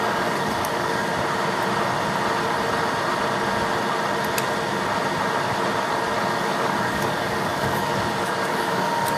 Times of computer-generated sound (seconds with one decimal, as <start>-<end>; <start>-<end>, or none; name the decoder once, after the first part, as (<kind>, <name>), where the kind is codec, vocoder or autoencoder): 0.0-1.1 (codec, DAC); 6.3-9.2